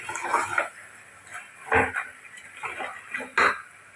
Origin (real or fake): real